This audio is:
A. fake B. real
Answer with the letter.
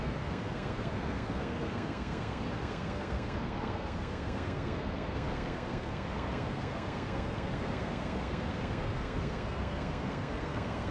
A